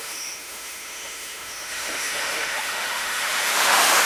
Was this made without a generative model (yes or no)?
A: no